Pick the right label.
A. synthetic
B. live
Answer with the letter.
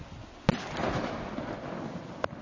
B